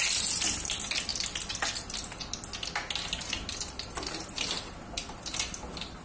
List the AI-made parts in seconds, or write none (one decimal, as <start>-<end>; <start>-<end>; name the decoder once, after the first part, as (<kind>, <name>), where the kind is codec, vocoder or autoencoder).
none